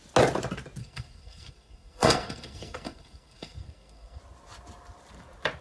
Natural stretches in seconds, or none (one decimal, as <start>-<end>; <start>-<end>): 0.0-0.8; 4.2-5.6